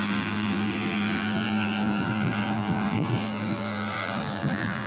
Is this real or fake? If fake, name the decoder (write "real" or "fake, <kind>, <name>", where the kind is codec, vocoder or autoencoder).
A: fake, vocoder, BigVGAN v2